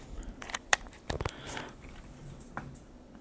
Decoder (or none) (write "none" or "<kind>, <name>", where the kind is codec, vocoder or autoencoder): vocoder, BigVGAN v2